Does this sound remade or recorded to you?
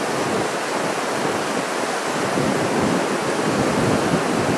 recorded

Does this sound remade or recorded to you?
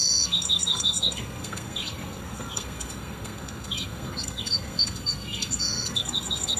remade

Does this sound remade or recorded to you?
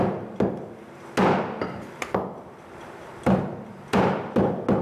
recorded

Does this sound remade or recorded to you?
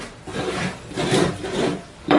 remade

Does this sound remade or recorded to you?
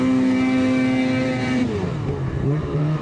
remade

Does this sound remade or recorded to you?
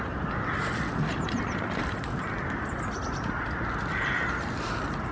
recorded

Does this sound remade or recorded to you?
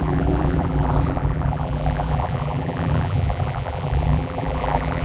remade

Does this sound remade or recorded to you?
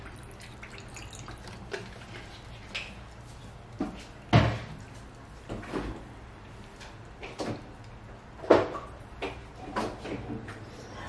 recorded